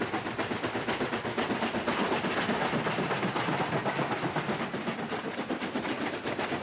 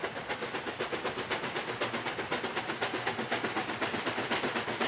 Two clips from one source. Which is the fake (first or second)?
first